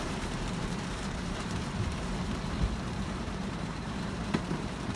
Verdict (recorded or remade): remade